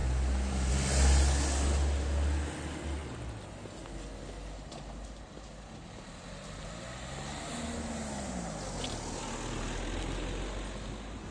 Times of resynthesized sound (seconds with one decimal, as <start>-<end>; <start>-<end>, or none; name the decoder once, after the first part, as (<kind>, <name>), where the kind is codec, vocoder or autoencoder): none